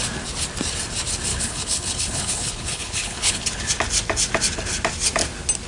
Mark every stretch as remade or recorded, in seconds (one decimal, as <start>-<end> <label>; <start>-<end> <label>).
0.0-1.3 recorded; 1.3-3.7 remade; 3.7-5.7 recorded